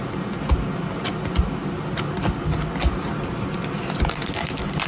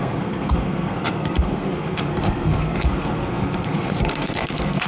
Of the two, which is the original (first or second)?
first